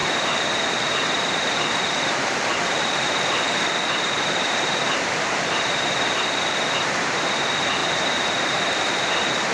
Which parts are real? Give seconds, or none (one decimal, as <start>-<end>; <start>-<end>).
none